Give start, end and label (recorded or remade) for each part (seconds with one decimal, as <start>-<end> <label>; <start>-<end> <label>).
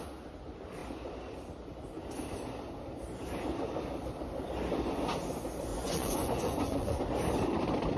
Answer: 0.0-5.7 recorded; 5.7-7.0 remade; 7.0-8.0 recorded